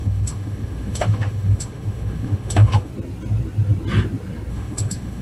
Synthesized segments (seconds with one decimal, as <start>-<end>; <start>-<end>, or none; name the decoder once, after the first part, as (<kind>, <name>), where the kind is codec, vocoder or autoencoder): 0.0-2.9 (autoencoder, DAC-VAE); 4.5-5.2